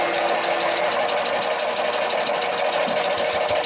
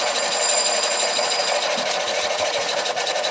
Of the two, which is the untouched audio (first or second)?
first